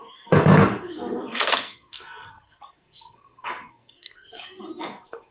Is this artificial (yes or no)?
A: yes